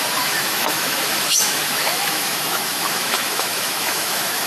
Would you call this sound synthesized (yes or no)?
yes